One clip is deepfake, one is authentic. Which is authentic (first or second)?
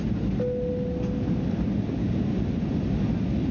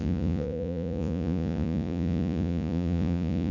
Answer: first